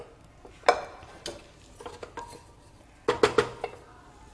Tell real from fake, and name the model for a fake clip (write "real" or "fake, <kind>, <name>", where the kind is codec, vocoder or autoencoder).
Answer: real